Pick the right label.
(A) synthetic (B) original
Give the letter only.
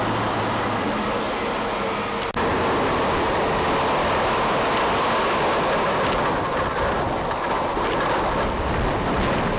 B